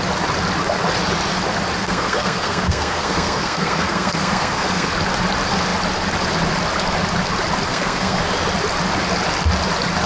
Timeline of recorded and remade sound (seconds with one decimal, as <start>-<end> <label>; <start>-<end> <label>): 0.0-1.8 recorded; 1.8-4.9 remade; 4.9-7.7 recorded; 7.7-8.2 remade; 8.2-10.1 recorded